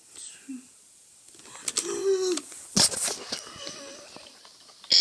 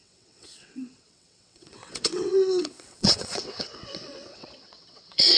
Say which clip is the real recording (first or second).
first